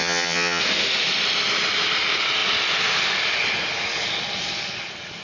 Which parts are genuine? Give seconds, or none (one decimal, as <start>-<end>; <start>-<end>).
0.6-5.2